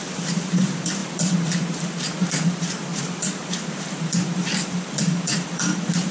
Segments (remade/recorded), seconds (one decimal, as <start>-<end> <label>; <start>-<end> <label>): 0.0-6.1 remade